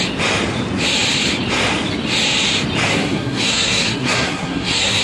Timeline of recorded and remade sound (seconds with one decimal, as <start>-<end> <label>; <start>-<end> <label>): 0.0-2.9 recorded; 2.9-5.0 remade